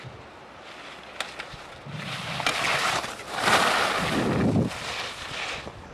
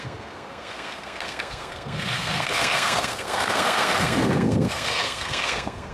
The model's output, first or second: second